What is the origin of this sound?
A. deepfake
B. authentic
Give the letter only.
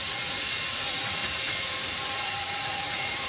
A